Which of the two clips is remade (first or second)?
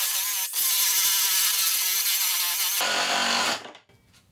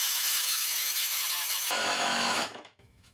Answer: second